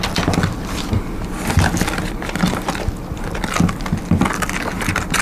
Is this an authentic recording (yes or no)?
yes